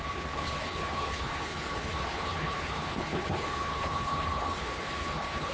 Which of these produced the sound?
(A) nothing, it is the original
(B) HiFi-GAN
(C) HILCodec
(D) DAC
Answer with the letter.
C